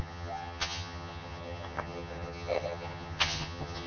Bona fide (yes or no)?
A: no